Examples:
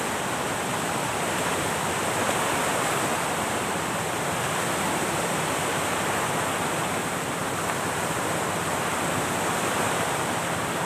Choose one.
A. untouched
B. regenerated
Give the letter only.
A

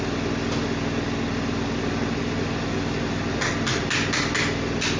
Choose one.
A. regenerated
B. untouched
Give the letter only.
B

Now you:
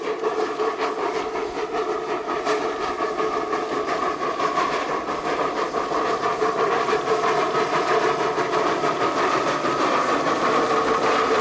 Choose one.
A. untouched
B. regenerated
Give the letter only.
B